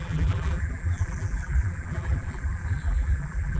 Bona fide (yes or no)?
no